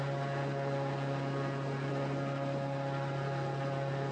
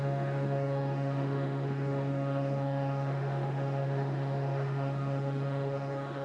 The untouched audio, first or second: first